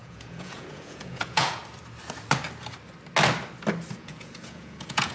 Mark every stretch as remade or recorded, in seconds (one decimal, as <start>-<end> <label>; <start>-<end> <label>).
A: 0.0-1.6 remade; 1.6-3.9 recorded; 3.9-5.1 remade